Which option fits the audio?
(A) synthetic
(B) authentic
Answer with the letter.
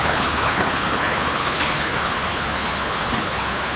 A